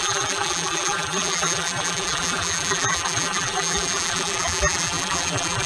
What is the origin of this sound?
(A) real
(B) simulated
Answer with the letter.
B